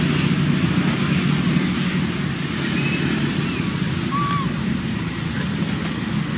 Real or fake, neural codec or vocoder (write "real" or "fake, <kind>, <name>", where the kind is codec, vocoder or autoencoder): real